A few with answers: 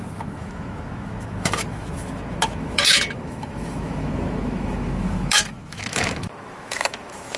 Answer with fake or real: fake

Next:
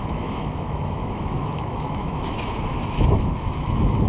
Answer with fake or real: fake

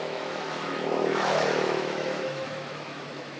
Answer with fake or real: fake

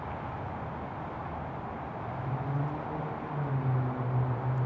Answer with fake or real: real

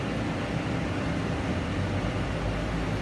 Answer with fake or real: real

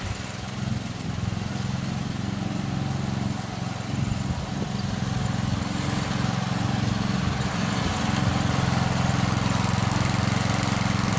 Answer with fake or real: real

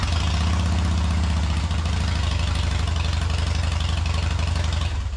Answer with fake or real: real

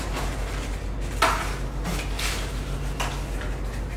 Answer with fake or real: real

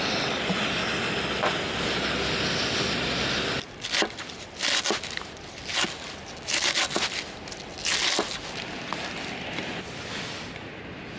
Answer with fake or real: real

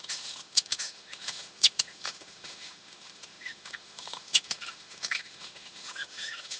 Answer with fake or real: fake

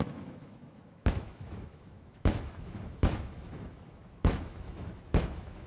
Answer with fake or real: fake